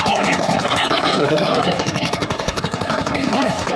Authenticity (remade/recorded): remade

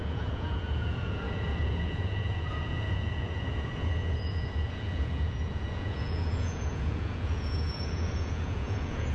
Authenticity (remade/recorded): remade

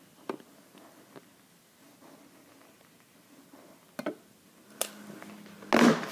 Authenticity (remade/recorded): recorded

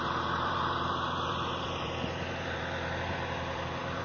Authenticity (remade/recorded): remade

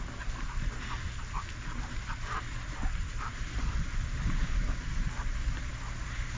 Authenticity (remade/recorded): recorded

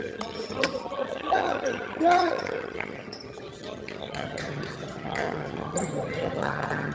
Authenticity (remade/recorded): remade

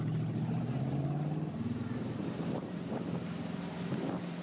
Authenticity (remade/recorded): remade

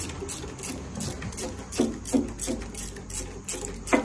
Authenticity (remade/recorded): recorded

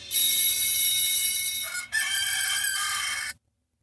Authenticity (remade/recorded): recorded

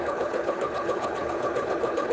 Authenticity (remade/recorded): remade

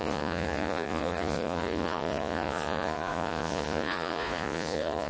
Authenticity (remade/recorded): remade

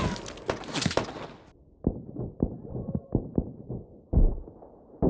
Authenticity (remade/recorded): recorded